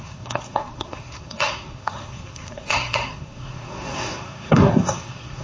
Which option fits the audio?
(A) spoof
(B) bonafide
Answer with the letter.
A